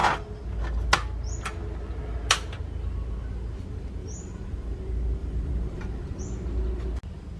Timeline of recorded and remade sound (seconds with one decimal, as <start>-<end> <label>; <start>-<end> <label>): 0.0-4.0 recorded; 4.0-4.8 remade; 4.8-5.2 recorded; 5.2-6.2 remade; 6.2-7.4 recorded